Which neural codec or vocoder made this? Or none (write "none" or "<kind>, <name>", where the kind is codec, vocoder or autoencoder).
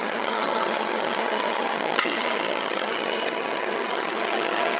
vocoder, HiFi-GAN